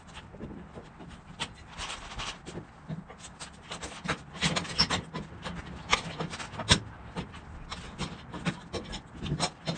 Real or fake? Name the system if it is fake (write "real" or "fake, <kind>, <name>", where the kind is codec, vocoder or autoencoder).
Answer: real